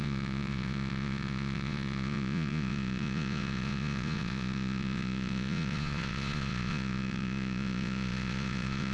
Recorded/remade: remade